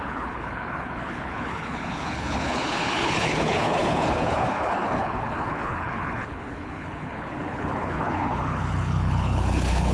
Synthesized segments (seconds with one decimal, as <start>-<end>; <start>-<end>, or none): 0.0-9.9